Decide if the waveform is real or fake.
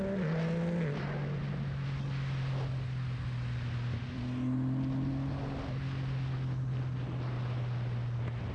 real